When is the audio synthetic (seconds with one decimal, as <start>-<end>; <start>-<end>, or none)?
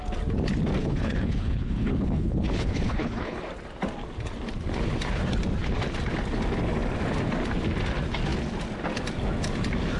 0.8-3.4